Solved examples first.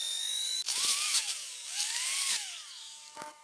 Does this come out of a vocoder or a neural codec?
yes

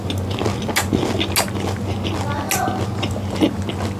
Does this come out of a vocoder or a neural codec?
no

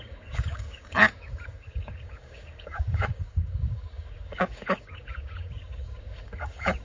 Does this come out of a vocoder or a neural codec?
yes